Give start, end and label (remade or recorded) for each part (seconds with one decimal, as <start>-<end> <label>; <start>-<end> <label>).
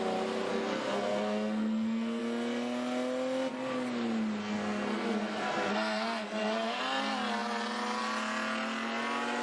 0.0-0.5 recorded; 0.5-2.2 remade; 2.2-4.4 recorded; 4.4-6.8 remade; 6.8-9.4 recorded